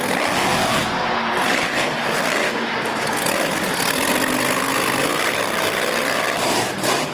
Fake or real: real